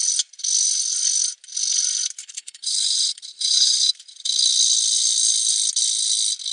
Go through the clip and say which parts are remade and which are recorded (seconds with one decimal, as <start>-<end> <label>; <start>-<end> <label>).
0.0-2.2 recorded; 2.2-3.9 remade; 3.9-6.5 recorded